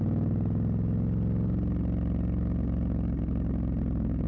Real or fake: real